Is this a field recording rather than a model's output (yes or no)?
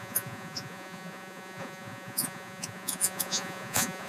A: no